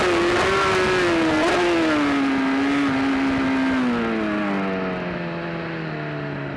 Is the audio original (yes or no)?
yes